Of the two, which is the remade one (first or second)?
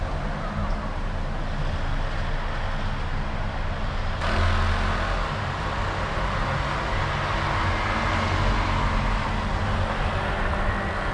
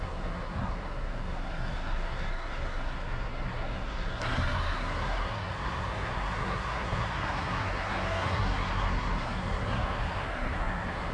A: second